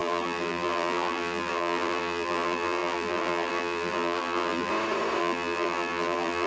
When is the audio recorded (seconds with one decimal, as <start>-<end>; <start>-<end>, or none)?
4.7-5.2